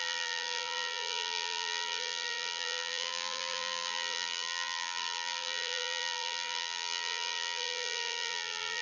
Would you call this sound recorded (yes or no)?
no